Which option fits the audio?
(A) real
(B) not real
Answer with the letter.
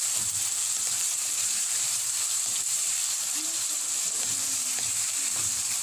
B